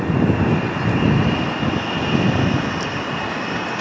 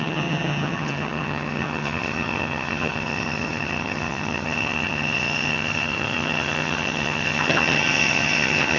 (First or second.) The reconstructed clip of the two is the second